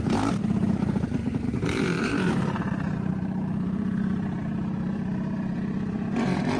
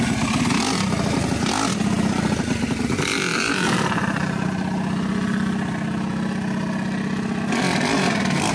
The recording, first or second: second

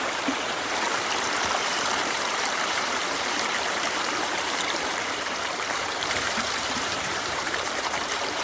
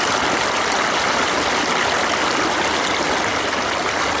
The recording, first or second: second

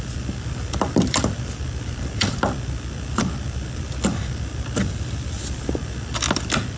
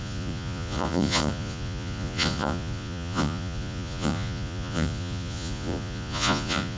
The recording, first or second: first